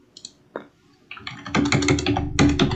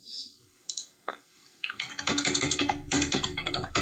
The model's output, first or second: second